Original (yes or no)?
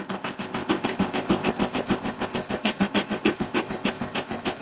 no